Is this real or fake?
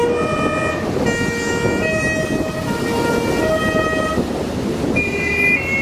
real